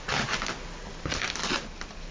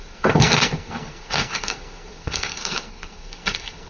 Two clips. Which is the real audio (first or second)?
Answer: first